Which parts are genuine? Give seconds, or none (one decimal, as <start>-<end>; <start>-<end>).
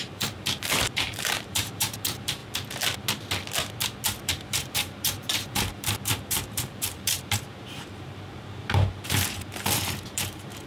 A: 2.4-4.2